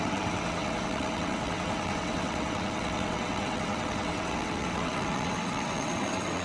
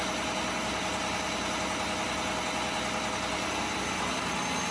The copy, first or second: first